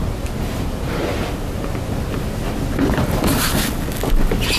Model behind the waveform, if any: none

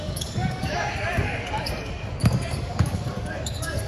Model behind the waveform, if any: codec, DAC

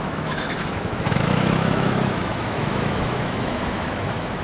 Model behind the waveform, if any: autoencoder, DAC-VAE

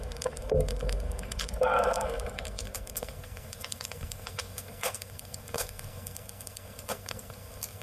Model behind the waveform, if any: codec, SNAC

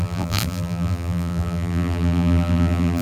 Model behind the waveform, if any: vocoder, BigVGAN v2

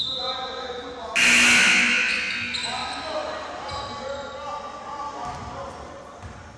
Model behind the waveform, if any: none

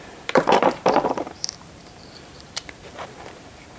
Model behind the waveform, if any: vocoder, BigVGAN v2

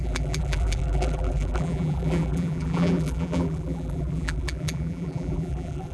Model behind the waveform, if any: vocoder, BigVGAN v2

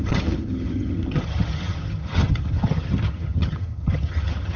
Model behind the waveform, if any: vocoder, HiFi-GAN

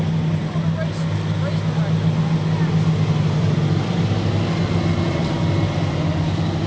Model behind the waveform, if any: none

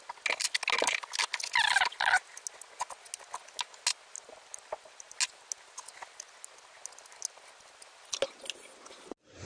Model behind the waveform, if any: none